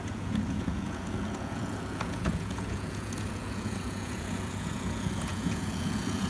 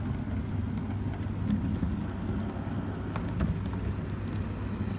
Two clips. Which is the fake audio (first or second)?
first